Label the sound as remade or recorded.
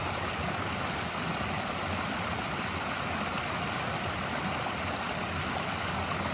recorded